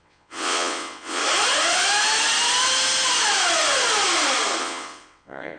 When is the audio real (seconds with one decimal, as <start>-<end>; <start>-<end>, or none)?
1.2-4.6